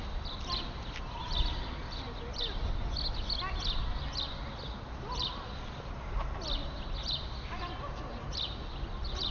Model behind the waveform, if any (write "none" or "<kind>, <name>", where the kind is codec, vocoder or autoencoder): none